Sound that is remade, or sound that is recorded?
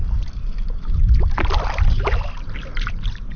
recorded